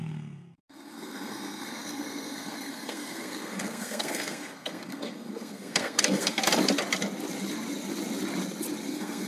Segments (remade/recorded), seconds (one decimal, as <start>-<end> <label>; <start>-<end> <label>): 0.0-6.4 remade; 6.4-8.9 recorded; 8.9-9.3 remade